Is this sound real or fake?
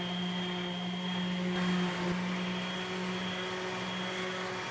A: real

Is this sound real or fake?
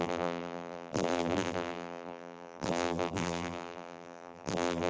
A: fake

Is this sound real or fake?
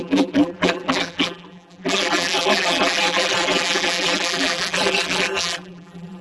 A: fake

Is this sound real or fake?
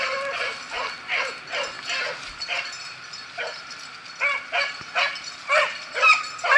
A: real